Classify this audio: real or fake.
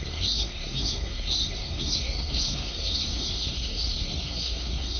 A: fake